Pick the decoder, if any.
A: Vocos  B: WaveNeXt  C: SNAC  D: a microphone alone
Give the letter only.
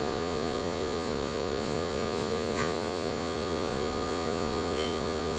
A